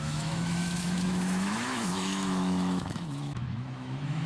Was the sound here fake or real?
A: fake